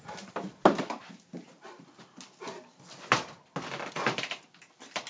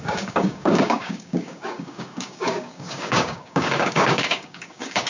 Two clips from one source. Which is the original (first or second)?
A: first